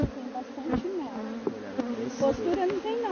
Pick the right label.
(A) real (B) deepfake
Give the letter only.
A